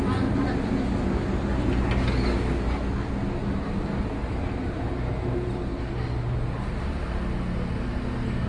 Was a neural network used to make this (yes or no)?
no